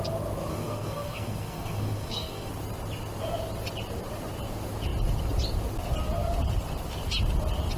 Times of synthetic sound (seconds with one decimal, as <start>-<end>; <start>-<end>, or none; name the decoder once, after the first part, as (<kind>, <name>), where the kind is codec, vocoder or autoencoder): 0.5-2.5 (codec, SNAC)